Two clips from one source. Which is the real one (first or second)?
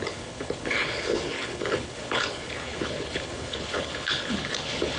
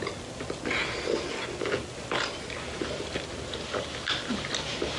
second